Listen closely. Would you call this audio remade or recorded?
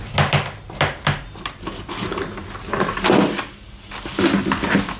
recorded